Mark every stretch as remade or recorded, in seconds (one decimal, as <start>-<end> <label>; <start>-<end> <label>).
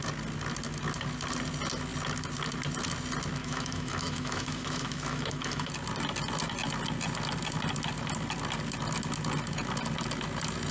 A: 0.0-3.4 recorded; 3.4-5.7 remade; 5.7-10.7 recorded